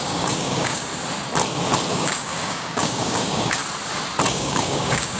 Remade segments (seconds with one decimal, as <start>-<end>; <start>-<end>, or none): 0.0-0.9; 1.9-3.6; 4.3-5.2

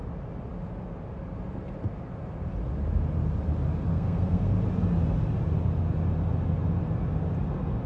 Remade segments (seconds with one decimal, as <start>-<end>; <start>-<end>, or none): 3.9-4.5

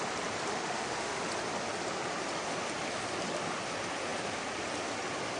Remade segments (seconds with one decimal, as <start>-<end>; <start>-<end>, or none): 0.5-1.2

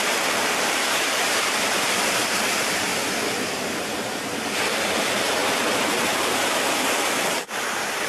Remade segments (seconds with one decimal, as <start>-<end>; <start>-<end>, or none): 0.0-2.9; 4.4-8.1

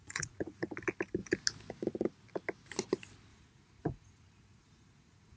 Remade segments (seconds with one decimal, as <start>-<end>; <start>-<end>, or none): 0.0-0.7; 3.3-5.4

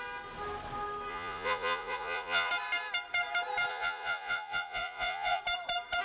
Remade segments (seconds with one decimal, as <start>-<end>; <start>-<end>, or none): 1.1-2.5; 3.7-5.4